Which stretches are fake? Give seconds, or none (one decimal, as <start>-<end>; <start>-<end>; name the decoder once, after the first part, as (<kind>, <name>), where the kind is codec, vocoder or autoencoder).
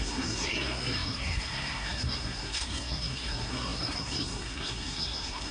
0.0-5.5 (codec, SNAC)